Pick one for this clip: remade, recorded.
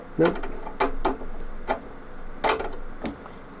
recorded